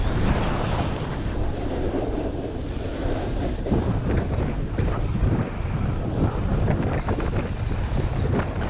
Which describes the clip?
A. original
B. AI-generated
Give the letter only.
A